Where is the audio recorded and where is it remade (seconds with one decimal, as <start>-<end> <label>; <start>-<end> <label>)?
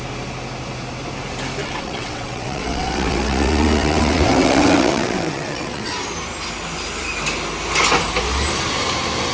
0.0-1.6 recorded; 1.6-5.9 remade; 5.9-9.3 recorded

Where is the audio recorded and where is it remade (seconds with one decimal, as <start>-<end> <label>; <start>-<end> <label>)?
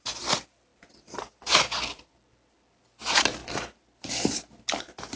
0.0-5.2 recorded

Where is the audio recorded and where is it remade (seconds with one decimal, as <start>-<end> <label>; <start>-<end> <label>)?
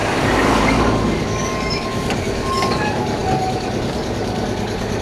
0.0-5.0 remade